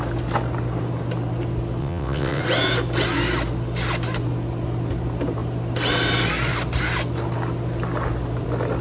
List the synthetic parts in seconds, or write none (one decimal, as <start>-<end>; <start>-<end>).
1.8-2.4